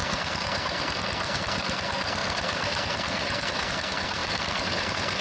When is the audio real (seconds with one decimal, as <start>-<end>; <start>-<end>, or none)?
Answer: none